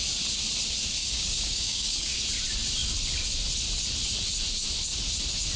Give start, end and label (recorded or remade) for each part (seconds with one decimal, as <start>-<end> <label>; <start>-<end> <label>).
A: 0.0-1.0 recorded; 1.0-2.2 remade; 2.2-5.6 recorded